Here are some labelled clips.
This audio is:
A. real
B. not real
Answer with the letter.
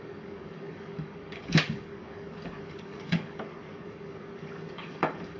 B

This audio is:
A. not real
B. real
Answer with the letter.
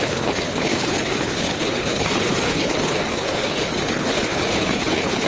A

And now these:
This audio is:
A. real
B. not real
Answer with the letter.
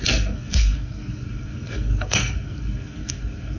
B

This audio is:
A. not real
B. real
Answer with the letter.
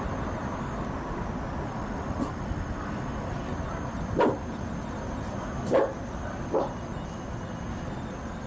B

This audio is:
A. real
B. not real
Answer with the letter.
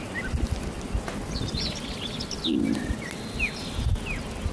A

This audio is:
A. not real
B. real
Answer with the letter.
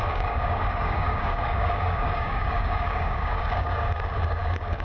A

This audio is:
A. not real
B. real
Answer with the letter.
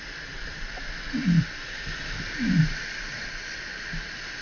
B